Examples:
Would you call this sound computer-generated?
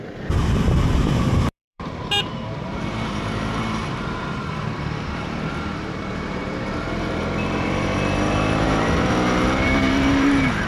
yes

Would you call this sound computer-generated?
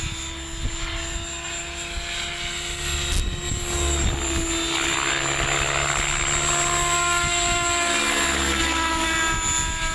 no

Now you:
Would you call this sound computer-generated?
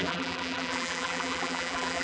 yes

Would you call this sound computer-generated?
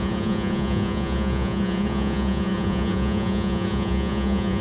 yes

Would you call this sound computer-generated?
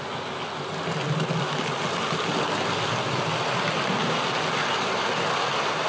no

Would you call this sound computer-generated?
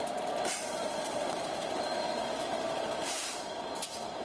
yes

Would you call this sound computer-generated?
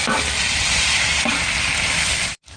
no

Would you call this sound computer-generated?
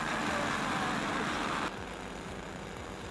no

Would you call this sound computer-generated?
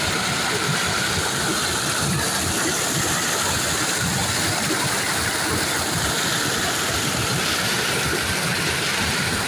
yes